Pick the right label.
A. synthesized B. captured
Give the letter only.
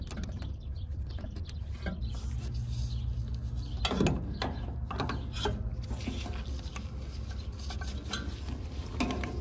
B